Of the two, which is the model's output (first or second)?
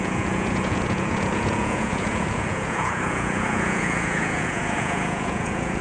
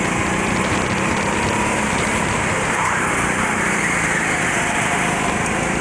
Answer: first